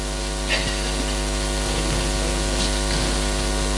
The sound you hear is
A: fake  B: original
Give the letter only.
B